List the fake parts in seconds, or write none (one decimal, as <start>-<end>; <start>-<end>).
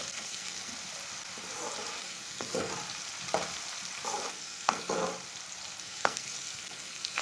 0.0-0.7; 2.0-2.7; 4.3-5.0; 5.8-7.2